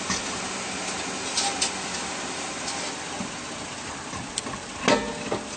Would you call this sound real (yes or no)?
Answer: yes